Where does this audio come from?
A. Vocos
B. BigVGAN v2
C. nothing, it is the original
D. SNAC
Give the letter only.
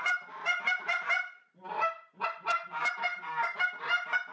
B